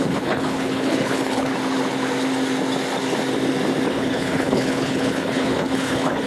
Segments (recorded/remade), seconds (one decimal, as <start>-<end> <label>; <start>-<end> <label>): 0.0-1.5 remade; 1.5-3.9 recorded; 3.9-6.3 remade

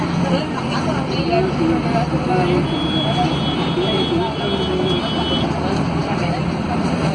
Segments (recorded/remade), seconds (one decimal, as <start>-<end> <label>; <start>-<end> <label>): 0.0-6.0 recorded; 6.0-7.1 remade